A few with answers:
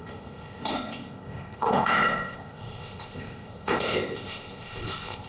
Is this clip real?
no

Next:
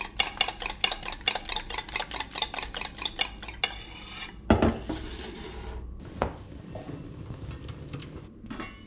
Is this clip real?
yes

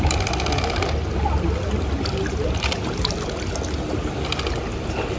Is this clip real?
yes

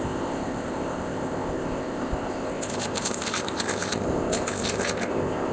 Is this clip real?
no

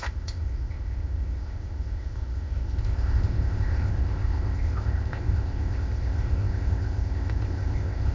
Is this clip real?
no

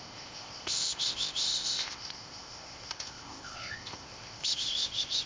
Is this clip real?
no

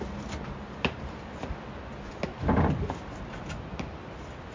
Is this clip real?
yes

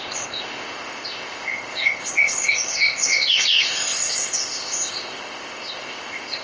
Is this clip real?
no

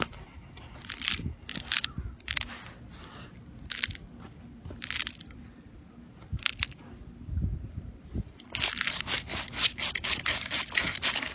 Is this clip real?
yes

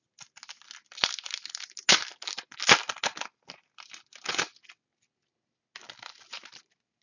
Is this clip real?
yes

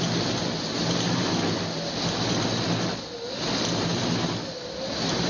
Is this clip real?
yes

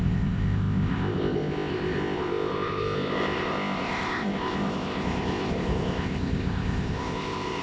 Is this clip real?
no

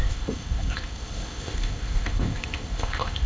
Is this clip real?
no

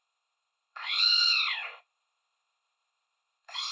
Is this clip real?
no